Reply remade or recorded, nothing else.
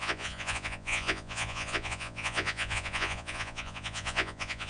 remade